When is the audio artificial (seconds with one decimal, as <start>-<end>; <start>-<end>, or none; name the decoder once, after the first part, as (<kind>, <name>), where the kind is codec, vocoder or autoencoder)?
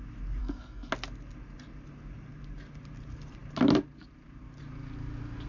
0.4-0.9 (codec, SNAC)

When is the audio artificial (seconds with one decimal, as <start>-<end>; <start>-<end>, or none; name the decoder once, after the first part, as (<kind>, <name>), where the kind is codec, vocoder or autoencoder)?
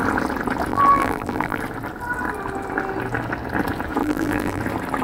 0.7-1.6 (vocoder, BigVGAN v2); 4.0-4.6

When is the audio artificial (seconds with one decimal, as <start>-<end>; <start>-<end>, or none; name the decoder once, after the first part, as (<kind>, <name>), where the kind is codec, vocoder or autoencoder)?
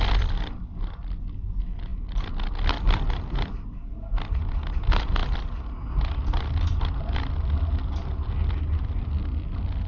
none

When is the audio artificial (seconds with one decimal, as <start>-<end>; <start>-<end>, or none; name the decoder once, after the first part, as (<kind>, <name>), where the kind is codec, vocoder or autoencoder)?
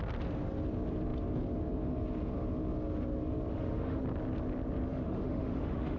3.5-4.0 (autoencoder, DAC-VAE); 4.9-6.0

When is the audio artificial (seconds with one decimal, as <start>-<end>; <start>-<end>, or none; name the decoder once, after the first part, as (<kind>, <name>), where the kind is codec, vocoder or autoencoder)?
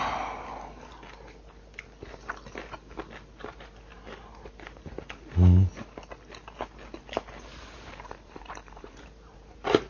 7.5-9.9 (vocoder, BigVGAN v2)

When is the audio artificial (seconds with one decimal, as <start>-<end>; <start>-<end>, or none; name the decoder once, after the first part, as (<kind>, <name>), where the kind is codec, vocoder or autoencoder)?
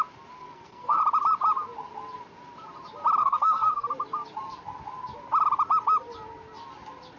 0.4-1.0 (codec, SNAC); 3.2-3.9